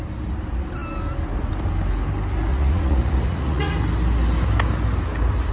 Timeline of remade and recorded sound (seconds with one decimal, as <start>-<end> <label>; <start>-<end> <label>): 0.0-2.5 recorded; 2.5-3.7 remade; 3.7-5.5 recorded